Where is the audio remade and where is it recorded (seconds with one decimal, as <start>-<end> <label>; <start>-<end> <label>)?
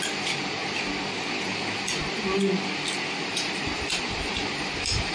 0.0-0.6 remade; 0.6-3.2 recorded; 3.2-5.1 remade